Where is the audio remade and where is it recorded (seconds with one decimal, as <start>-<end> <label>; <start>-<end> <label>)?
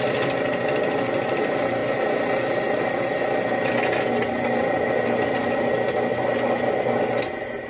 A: 0.0-7.7 recorded